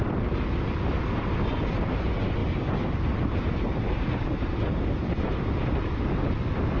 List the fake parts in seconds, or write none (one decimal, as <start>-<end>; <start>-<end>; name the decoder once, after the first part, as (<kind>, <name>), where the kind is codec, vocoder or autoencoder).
2.4-6.3 (vocoder, BigVGAN v2)